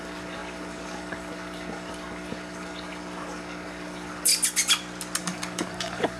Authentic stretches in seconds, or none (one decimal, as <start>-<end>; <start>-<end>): 4.3-5.2